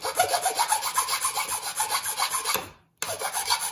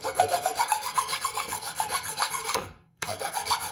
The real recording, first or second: first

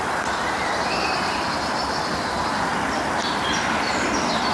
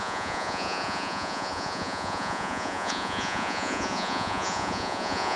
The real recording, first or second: first